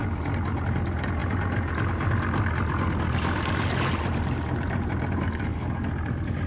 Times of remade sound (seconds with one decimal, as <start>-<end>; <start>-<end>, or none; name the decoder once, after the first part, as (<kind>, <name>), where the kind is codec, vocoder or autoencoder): none